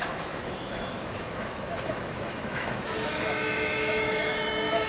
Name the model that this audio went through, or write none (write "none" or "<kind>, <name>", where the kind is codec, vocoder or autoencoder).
autoencoder, DAC-VAE